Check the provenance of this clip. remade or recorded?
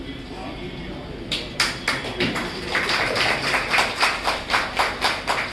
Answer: remade